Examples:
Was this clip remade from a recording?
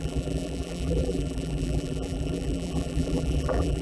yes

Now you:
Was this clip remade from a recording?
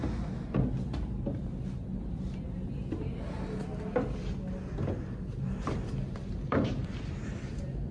no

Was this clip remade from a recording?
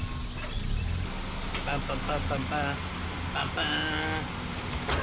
no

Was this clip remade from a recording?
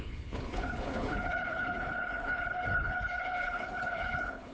yes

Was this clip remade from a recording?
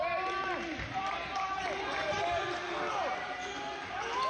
no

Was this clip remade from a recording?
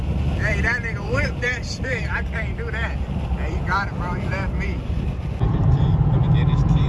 yes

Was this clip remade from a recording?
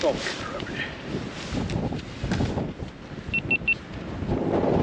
no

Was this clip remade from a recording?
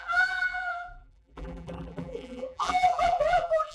yes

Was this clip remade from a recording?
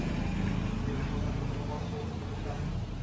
no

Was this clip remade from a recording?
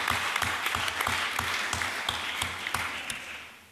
no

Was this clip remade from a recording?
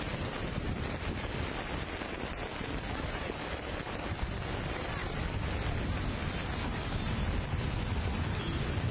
no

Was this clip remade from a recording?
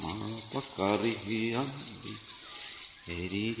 no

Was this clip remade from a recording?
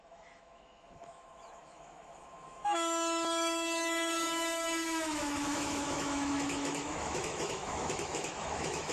yes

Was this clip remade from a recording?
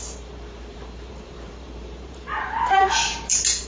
yes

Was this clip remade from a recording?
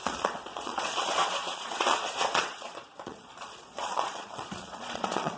yes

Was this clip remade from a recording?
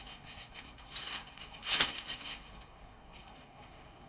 yes